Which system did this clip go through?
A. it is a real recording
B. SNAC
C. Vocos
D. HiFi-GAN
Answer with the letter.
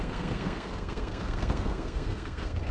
B